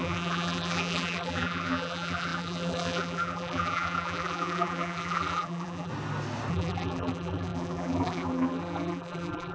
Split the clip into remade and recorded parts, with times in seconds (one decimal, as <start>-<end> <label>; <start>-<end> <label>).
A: 0.0-5.9 remade; 5.9-6.5 recorded; 6.5-9.5 remade